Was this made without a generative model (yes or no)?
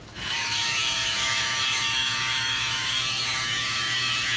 no